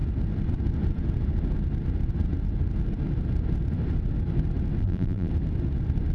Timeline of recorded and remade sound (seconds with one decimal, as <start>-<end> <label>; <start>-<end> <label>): 0.0-4.8 recorded; 4.8-5.3 remade; 5.3-6.1 recorded